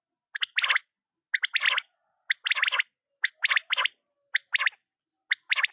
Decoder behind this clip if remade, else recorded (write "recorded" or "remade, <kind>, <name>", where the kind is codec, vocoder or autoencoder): recorded